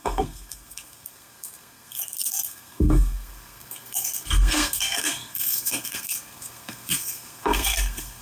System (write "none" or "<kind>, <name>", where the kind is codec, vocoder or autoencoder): codec, SNAC